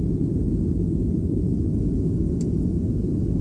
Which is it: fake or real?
real